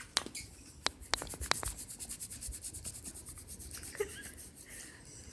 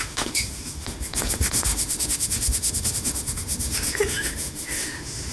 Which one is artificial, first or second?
second